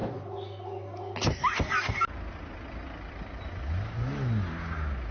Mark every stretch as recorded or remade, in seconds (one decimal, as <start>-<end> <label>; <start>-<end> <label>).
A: 0.0-5.1 recorded